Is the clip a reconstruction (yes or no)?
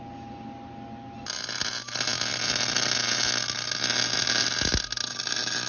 no